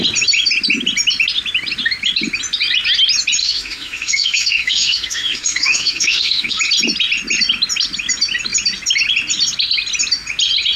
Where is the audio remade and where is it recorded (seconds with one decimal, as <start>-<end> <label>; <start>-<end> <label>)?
0.0-3.4 recorded; 3.4-6.6 remade; 6.6-10.8 recorded